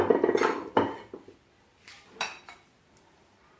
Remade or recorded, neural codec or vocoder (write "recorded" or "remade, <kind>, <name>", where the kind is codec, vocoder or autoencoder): recorded